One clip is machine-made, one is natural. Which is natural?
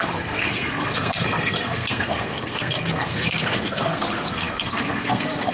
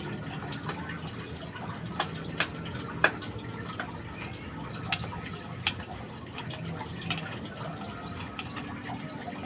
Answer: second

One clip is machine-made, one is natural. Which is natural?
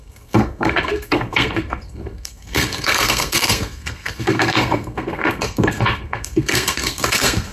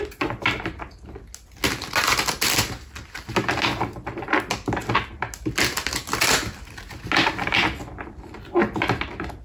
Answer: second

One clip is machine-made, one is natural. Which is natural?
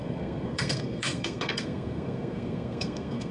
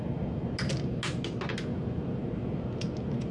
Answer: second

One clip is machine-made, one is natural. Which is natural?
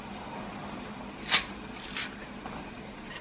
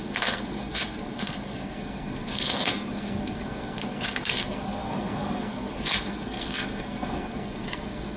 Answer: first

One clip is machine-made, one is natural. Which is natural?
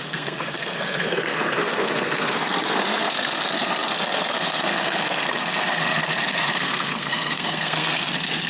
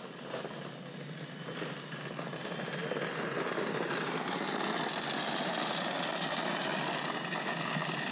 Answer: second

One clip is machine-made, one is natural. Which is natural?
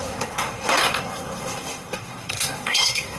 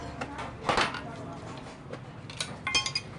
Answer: second